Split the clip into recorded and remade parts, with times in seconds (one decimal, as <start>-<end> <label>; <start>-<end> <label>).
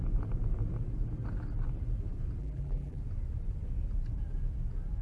0.0-2.4 recorded; 2.4-3.0 remade; 3.0-5.0 recorded